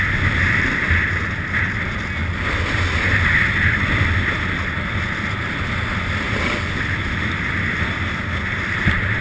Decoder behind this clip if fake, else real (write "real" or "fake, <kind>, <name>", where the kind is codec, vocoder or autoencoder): real